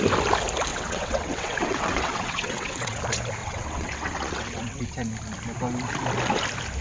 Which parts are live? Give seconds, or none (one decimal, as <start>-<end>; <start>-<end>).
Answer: 0.0-0.7; 3.0-3.4; 4.9-6.8